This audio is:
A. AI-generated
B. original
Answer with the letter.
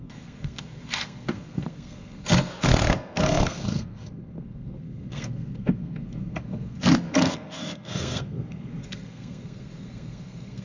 A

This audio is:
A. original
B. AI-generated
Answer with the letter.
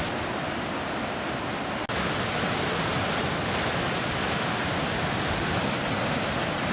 A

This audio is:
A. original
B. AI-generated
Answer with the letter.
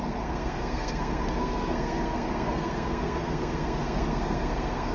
B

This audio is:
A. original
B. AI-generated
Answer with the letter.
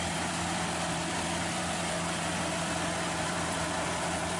B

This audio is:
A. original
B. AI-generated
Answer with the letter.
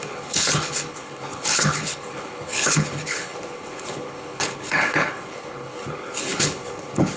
B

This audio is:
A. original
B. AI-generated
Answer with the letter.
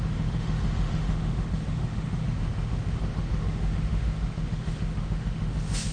B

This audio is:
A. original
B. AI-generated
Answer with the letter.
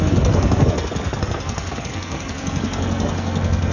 B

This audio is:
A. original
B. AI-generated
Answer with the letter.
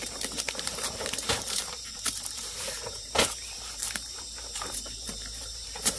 B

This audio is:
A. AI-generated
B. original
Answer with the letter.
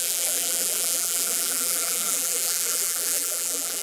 A